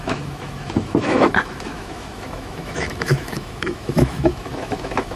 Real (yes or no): no